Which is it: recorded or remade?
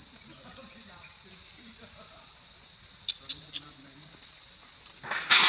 recorded